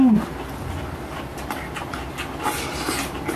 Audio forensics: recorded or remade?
recorded